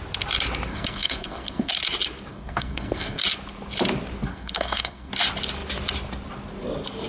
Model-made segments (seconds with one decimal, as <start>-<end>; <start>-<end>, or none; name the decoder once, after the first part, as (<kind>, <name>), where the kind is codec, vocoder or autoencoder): 0.7-1.7 (codec, SNAC); 2.3-3.2; 4.3-5.1